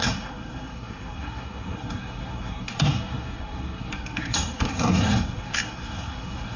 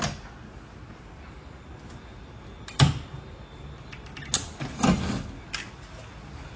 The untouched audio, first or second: second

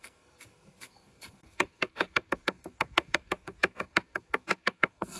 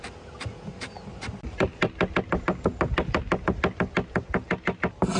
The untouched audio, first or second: second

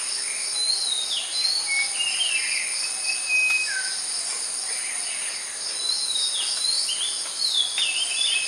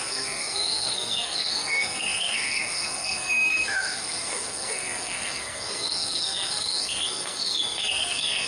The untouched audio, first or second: first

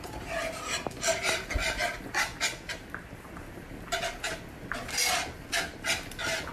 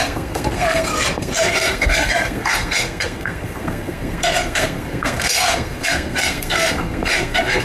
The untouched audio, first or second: first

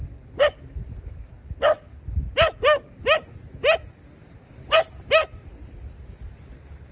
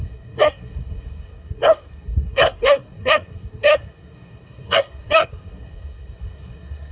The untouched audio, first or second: first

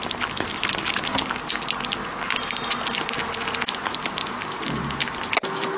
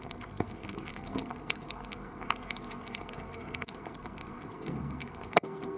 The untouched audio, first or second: first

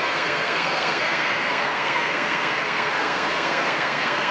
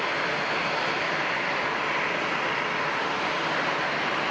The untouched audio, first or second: second